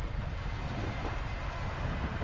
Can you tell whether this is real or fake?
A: real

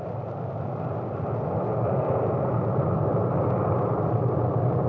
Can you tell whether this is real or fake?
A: real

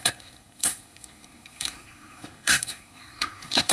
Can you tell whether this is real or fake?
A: fake